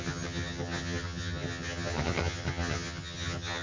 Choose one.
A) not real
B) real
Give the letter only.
A